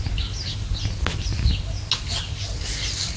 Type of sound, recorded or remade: recorded